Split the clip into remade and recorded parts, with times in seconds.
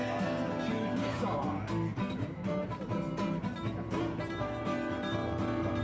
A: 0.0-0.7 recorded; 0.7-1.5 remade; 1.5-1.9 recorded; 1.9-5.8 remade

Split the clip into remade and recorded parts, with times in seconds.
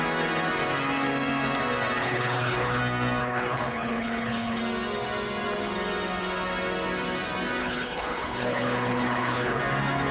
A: 0.0-2.0 recorded; 2.0-2.8 remade; 2.8-3.2 recorded; 3.2-4.6 remade; 4.6-7.6 recorded; 7.6-9.6 remade; 9.6-10.1 recorded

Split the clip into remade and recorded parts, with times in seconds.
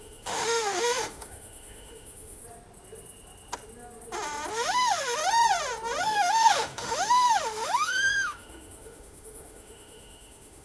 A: 0.0-2.4 remade; 2.4-4.5 recorded; 4.5-5.2 remade; 5.2-6.0 recorded; 6.0-10.6 remade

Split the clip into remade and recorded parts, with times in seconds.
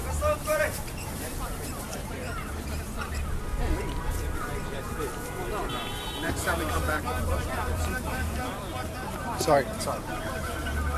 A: 0.0-11.0 remade